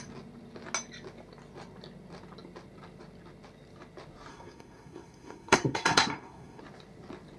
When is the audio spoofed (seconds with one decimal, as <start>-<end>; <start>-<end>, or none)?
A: 4.3-6.6